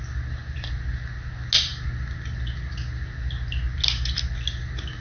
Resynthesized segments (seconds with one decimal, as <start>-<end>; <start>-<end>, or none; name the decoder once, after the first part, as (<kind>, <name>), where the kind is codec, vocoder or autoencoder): none